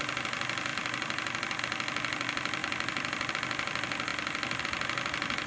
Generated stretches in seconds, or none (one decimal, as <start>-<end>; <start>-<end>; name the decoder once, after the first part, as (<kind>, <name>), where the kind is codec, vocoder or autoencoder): 0.7-1.6 (vocoder, BigVGAN v2); 2.6-3.3